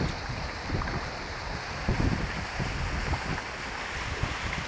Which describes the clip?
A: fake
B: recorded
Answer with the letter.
B